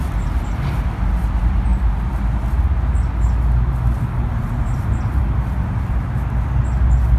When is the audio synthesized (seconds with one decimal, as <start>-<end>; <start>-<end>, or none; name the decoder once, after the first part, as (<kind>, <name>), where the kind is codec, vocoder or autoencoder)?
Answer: none